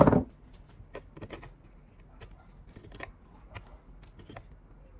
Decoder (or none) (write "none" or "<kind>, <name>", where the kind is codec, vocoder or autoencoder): none